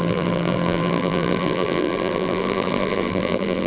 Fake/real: fake